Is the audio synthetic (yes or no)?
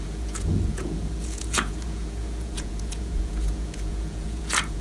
yes